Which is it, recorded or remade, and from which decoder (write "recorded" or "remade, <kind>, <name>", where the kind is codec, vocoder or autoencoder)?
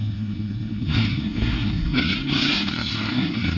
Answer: remade, codec, SNAC